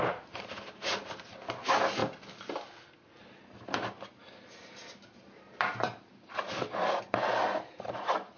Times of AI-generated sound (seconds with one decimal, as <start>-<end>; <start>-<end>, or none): none